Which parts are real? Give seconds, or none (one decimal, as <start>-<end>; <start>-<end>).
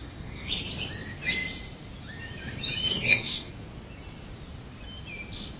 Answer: 0.5-2.9; 3.5-5.6